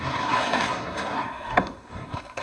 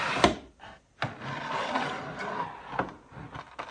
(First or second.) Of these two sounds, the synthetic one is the first